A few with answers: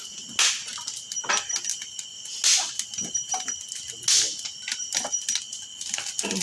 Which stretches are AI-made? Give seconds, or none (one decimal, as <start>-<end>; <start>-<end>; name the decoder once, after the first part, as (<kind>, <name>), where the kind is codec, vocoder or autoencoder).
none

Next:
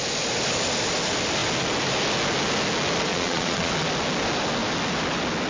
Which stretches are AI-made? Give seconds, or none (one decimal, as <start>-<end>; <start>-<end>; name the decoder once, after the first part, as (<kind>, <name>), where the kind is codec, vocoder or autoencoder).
3.1-3.7 (vocoder, Vocos)

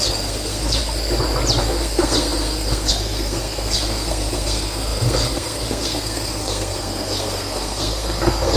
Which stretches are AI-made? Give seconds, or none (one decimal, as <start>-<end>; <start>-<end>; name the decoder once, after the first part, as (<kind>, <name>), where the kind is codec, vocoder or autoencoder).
0.0-0.8 (codec, SNAC); 1.6-8.6

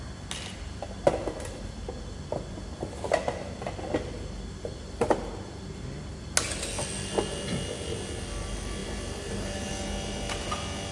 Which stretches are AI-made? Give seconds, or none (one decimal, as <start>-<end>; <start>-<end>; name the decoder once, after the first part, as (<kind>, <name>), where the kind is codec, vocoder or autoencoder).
8.8-9.7 (vocoder, BigVGAN v2)

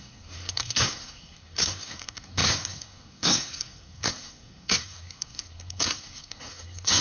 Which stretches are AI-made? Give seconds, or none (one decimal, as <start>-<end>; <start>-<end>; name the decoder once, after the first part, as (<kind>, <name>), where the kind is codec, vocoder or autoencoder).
0.0-7.0 (codec, SNAC)

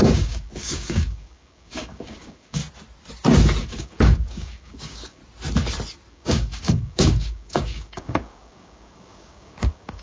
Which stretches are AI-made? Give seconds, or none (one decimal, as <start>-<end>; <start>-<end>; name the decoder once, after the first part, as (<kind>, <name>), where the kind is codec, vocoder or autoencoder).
0.0-2.6 (codec, DAC); 3.6-5.2; 6.1-10.0